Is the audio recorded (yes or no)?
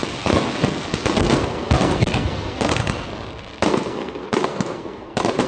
no